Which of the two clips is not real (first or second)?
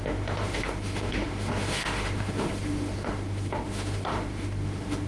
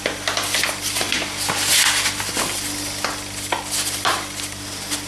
first